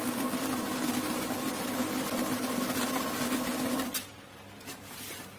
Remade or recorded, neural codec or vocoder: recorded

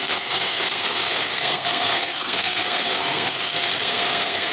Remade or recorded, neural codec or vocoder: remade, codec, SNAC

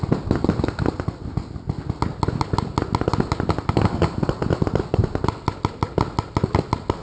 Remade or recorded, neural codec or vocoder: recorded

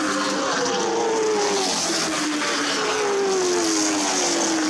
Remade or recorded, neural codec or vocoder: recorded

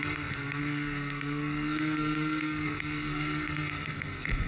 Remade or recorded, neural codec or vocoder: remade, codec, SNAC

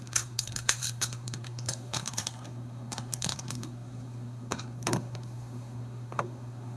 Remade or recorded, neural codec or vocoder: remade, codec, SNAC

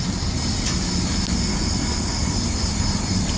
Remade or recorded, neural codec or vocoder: recorded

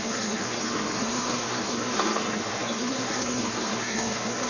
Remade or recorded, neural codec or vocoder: remade, codec, SNAC